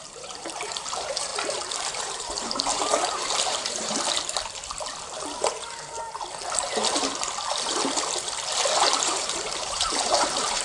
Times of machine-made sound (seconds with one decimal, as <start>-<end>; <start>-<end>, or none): 0.0-1.3; 2.0-3.9; 8.9-10.6